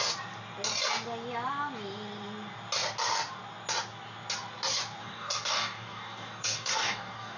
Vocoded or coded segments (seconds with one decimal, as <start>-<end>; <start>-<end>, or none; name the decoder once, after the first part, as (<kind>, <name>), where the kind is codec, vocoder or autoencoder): 5.0-7.4 (codec, DAC)